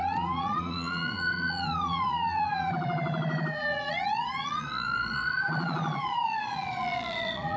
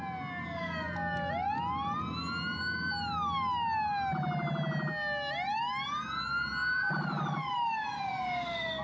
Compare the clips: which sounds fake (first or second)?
first